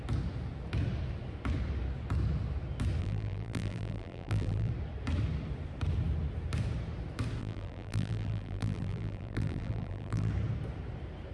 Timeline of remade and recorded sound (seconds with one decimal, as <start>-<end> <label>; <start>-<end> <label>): 0.0-3.0 recorded; 3.0-4.7 remade; 4.7-7.4 recorded; 7.4-10.3 remade; 10.3-11.3 recorded

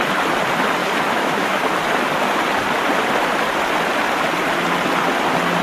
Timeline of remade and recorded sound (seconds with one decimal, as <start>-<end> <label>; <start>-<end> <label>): 0.0-0.8 recorded; 0.8-1.6 remade; 1.6-5.6 recorded

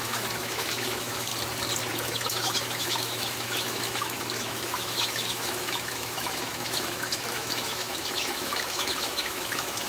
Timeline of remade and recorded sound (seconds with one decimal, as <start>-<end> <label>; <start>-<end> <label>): 0.0-1.3 remade; 1.3-1.9 recorded; 1.9-9.9 remade

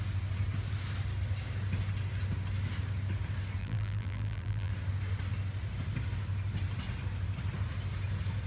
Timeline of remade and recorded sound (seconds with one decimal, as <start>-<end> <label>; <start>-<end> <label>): 0.0-3.6 recorded; 3.6-4.7 remade; 4.7-8.5 recorded

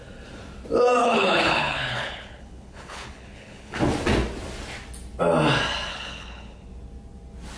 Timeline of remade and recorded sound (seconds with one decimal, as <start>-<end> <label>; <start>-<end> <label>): 0.0-1.0 recorded; 1.0-3.8 remade; 3.8-5.9 recorded; 5.9-6.7 remade; 6.7-7.6 recorded

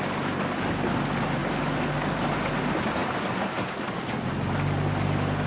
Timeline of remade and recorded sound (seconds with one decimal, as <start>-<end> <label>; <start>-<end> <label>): 0.0-5.5 recorded

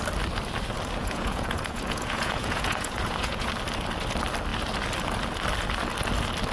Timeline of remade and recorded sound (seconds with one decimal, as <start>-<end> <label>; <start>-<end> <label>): 0.0-1.0 recorded; 1.0-3.5 remade; 3.5-6.5 recorded